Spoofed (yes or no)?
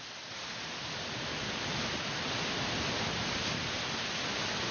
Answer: no